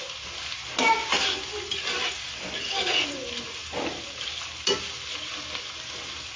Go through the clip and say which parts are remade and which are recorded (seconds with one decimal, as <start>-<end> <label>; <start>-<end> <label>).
0.0-6.4 recorded